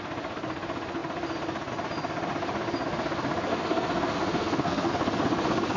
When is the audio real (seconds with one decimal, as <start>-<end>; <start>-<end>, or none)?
0.0-3.5; 4.9-5.8